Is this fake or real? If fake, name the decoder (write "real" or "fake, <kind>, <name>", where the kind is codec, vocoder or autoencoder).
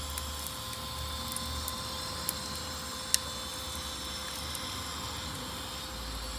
real